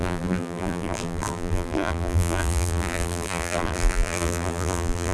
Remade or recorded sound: remade